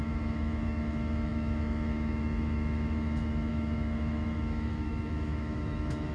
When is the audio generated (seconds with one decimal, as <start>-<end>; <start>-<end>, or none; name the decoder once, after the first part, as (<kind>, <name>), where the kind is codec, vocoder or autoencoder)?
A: 0.0-6.1 (autoencoder, DAC-VAE)